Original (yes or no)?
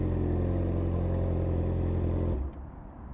yes